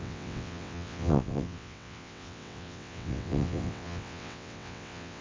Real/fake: fake